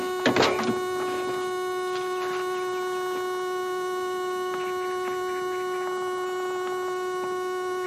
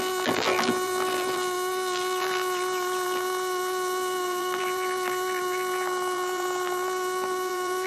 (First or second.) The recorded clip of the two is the first